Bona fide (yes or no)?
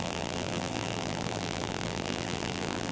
no